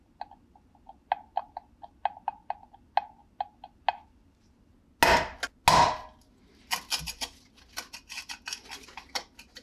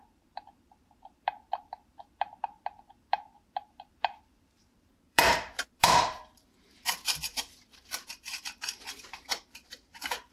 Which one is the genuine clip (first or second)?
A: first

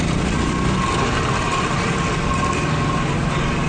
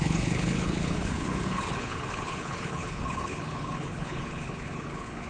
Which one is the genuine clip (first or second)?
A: first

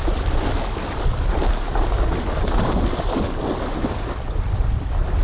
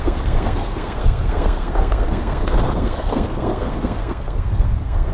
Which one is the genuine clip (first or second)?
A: first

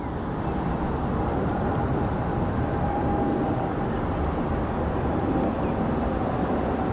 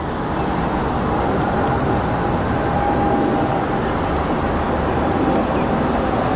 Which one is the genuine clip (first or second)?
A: second